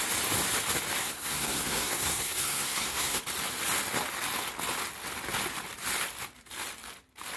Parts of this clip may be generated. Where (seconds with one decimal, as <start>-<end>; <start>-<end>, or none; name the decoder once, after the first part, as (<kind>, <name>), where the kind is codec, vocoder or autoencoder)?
1.0-3.2 (codec, SNAC)